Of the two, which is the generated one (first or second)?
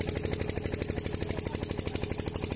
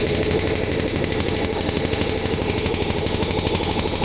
second